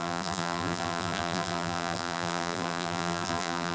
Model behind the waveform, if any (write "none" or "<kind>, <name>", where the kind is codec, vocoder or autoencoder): vocoder, BigVGAN v2